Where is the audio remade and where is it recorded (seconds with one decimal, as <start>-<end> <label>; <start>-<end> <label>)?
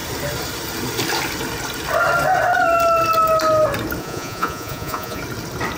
0.0-4.0 recorded; 4.0-5.2 remade; 5.2-5.8 recorded